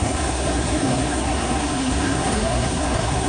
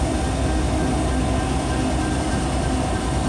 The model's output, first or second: first